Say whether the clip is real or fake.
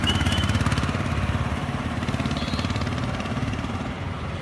fake